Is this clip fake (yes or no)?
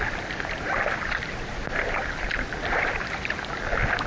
no